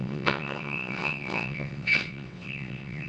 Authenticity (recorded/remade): remade